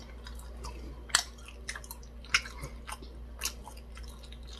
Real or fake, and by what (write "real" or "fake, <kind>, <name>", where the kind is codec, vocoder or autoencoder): real